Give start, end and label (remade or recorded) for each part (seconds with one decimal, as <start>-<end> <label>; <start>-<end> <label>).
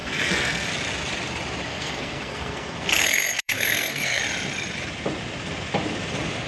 0.0-0.7 remade; 0.7-1.7 recorded; 1.7-4.2 remade; 4.2-6.5 recorded